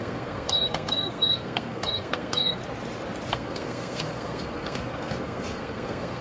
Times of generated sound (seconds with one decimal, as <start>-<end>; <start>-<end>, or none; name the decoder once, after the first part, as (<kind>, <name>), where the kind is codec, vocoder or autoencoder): 0.0-2.6 (codec, SNAC); 3.3-6.2